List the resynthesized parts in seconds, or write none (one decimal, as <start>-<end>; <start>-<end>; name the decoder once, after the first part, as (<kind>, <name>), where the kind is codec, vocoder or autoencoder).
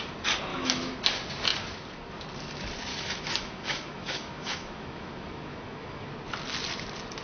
0.5-1.0 (autoencoder, DAC-VAE); 2.9-6.1